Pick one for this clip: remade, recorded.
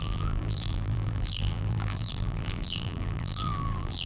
remade